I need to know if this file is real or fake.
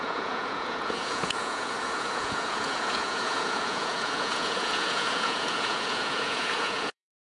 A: fake